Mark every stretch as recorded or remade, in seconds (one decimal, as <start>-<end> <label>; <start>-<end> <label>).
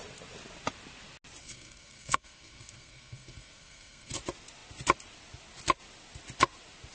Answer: 0.0-1.4 recorded; 1.4-4.1 remade; 4.1-6.9 recorded